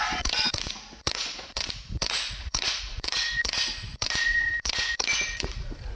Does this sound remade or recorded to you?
remade